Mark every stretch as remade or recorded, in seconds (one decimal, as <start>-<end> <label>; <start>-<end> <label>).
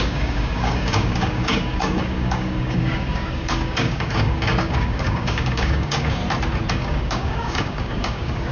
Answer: 0.0-6.2 remade; 6.2-6.7 recorded; 6.7-8.5 remade